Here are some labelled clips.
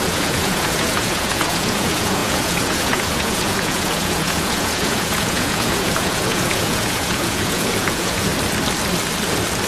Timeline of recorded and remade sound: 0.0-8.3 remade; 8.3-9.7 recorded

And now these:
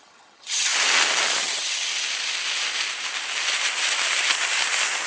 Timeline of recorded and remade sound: 0.0-0.7 remade; 0.7-1.4 recorded; 1.4-1.9 remade; 1.9-5.1 recorded

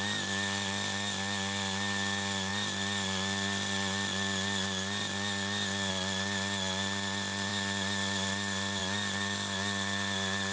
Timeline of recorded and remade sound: 0.0-10.5 recorded

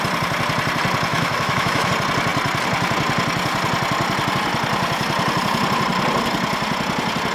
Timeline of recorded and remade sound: 0.0-1.1 recorded; 1.1-1.9 remade; 1.9-7.3 recorded

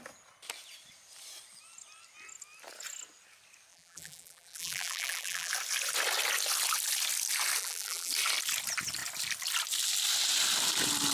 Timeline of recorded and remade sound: 0.0-3.7 recorded; 3.7-5.5 remade; 5.5-7.6 recorded; 7.6-8.1 remade; 8.1-11.1 recorded

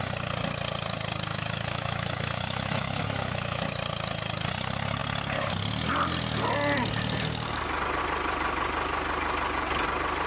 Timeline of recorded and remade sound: 0.0-1.3 recorded; 1.3-3.6 remade; 3.6-10.3 recorded

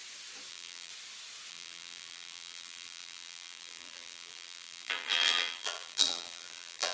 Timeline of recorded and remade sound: 0.0-0.5 recorded; 0.5-0.9 remade; 0.9-1.5 recorded; 1.5-6.9 remade